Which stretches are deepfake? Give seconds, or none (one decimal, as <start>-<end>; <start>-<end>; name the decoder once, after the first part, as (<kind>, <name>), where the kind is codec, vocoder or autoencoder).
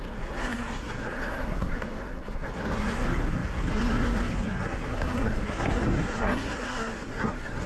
0.0-7.7 (codec, SNAC)